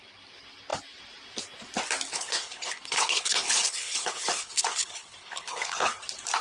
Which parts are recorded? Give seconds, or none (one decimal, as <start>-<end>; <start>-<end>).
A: 0.0-2.1; 5.9-6.4